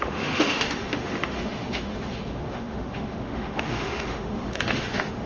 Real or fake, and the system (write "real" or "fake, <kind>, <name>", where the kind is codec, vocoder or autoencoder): fake, autoencoder, DAC-VAE